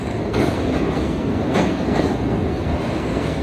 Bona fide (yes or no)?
no